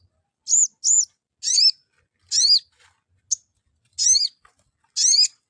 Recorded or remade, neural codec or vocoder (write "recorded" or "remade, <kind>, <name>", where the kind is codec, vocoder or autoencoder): recorded